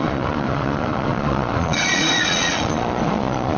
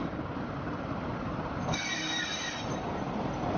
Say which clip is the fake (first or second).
first